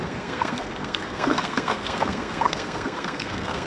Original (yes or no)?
no